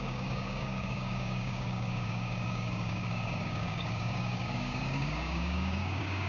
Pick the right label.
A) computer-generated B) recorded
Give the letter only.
A